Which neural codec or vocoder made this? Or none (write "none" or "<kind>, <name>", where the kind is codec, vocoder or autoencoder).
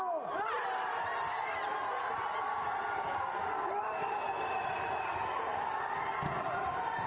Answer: none